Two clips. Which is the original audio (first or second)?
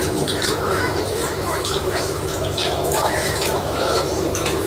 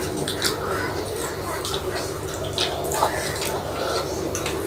second